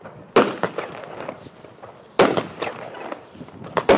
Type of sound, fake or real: real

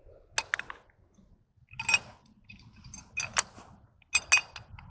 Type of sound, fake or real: real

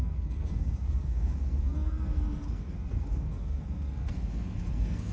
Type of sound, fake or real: fake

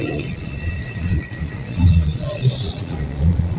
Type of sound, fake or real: fake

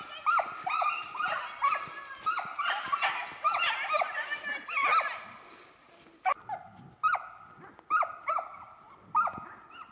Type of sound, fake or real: real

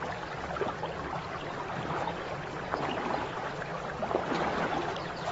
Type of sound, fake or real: real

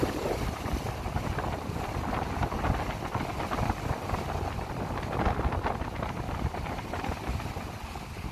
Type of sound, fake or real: real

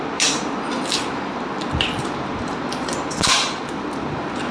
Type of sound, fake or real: real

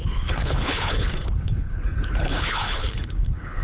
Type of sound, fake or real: fake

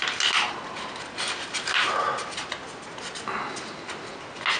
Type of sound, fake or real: real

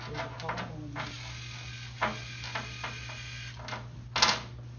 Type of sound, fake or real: real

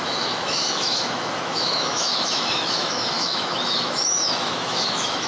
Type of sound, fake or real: fake